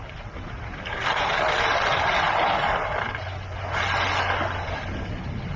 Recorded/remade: recorded